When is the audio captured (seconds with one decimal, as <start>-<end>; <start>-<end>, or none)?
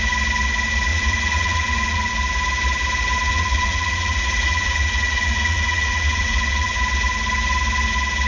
0.0-0.9; 2.1-3.3; 6.8-8.3